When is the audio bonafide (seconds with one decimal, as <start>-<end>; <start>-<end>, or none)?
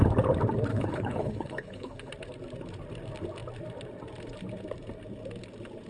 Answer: 0.0-0.7; 2.1-5.9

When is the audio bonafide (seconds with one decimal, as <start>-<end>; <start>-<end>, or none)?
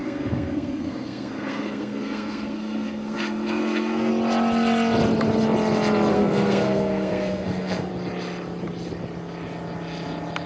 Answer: 4.1-6.1; 7.9-10.5